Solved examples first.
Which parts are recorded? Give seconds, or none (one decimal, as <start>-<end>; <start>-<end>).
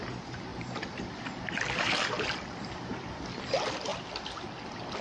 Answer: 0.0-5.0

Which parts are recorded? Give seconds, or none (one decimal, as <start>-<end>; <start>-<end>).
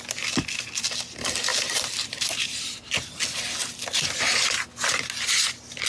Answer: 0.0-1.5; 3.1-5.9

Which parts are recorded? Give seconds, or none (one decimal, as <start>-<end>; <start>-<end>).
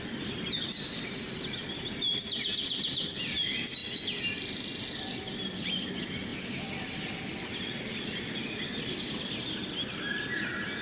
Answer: 0.0-10.8